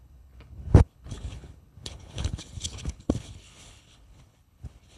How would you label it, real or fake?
fake